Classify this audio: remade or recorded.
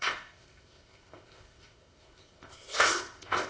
remade